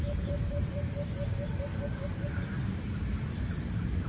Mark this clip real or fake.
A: fake